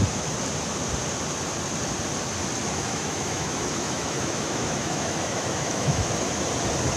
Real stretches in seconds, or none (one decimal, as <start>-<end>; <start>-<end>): 0.0-2.7; 6.4-7.0

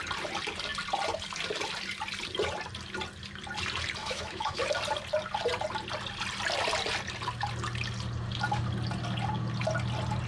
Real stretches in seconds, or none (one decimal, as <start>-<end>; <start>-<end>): 0.0-4.0; 4.6-10.3

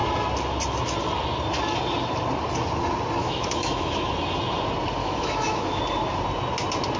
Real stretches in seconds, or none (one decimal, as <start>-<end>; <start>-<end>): 0.0-3.2; 4.1-5.0; 5.8-7.0

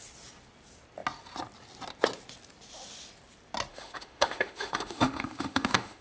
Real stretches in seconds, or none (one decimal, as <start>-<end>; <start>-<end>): 0.0-3.7

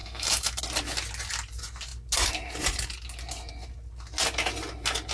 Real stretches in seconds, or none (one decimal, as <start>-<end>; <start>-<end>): 0.6-5.1

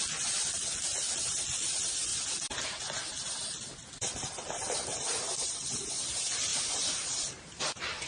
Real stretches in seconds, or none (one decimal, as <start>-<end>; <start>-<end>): 0.0-8.1

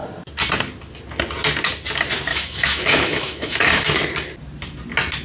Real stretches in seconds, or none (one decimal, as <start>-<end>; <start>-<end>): 0.0-2.3; 3.9-5.2